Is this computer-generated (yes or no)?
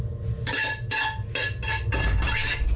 no